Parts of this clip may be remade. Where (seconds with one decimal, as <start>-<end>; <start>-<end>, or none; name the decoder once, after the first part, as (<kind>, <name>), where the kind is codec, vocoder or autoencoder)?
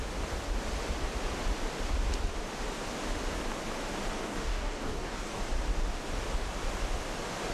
4.2-5.4 (codec, DAC)